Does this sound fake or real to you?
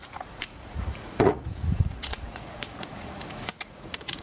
fake